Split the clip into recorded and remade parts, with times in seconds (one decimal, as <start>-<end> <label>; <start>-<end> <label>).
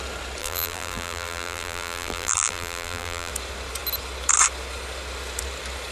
0.0-0.4 recorded; 0.4-3.3 remade; 3.3-5.9 recorded